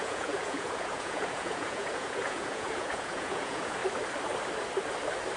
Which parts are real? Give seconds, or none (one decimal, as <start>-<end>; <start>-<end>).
3.8-5.4